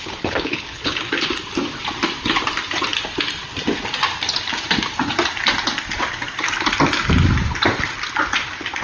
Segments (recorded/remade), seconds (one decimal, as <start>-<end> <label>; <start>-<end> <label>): 0.0-1.0 remade; 1.0-8.8 recorded